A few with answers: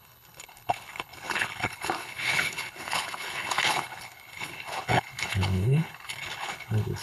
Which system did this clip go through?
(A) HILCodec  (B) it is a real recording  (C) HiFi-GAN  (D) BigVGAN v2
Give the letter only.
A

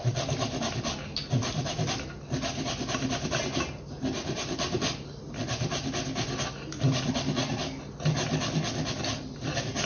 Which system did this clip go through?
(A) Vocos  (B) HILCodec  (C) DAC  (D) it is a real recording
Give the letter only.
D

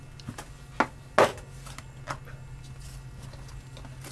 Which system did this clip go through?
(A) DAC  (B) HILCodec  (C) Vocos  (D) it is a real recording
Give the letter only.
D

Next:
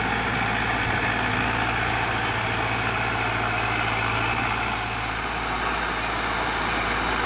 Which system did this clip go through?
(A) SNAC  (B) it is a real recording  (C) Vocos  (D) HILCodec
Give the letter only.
B